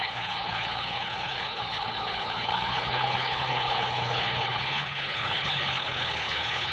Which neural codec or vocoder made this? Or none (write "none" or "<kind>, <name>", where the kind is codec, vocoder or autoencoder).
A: codec, HILCodec